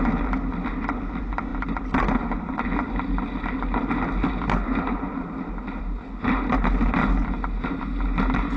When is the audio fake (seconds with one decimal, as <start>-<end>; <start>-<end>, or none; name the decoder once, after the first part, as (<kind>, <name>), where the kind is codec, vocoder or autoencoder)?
none